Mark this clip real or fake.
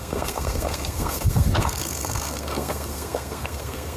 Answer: fake